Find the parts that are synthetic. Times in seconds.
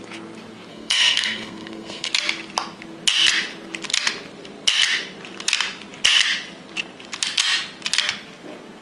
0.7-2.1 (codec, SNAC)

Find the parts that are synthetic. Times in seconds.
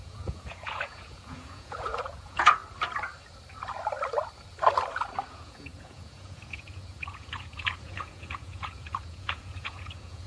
0.0-2.6 (vocoder, Vocos); 5.3-10.3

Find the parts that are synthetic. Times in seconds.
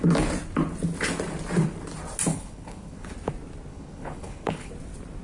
2.3-3.1 (codec, HILCodec); 3.7-4.7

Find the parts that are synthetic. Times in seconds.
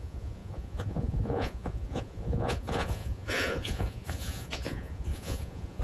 0.0-5.8 (vocoder, Vocos)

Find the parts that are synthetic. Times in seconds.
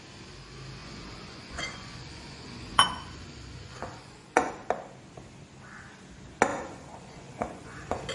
0.8-4.5 (vocoder, Vocos); 6.5-8.1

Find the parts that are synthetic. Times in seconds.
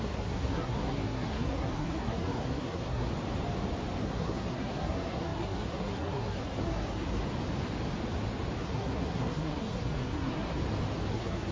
0.0-3.1 (codec, SNAC); 4.0-7.2; 8.6-10.6; 11.1-11.5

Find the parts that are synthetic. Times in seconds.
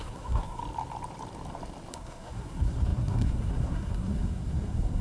0.0-0.6 (codec, SNAC); 1.9-5.0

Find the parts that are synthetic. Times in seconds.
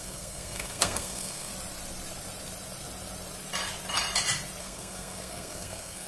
0.0-1.5 (codec, SNAC); 4.6-6.1